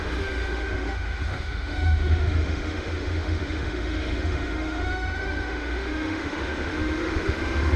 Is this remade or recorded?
remade